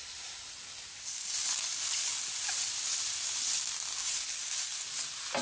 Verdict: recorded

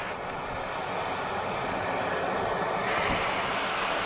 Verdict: recorded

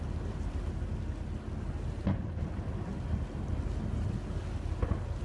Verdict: recorded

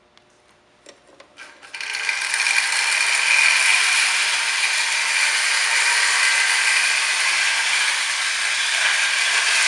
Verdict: recorded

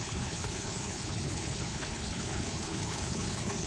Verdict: remade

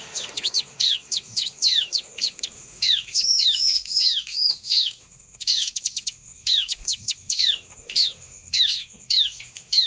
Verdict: remade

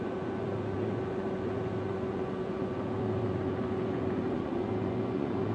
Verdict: remade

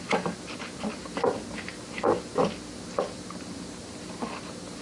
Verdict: recorded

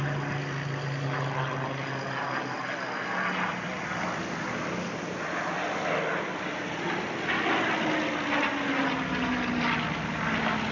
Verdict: recorded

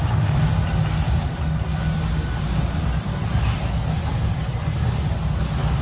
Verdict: recorded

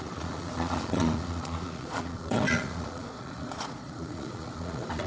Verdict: remade